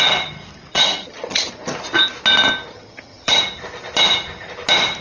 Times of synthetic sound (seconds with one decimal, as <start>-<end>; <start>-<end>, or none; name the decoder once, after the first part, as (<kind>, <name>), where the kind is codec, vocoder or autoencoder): 0.7-1.5 (vocoder, HiFi-GAN); 2.7-3.4